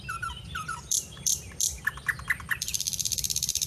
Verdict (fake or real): fake